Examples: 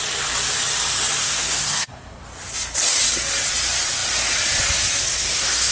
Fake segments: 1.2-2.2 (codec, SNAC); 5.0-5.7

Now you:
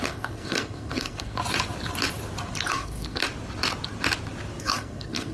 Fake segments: 0.0-1.4 (codec, SNAC); 2.7-3.2; 4.6-5.3